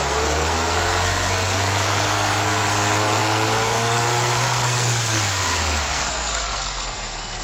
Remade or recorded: remade